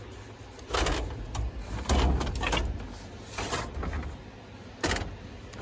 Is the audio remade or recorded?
recorded